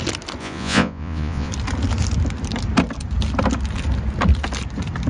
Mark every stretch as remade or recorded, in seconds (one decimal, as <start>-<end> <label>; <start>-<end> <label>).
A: 0.0-0.4 recorded; 0.4-1.5 remade; 1.5-5.1 recorded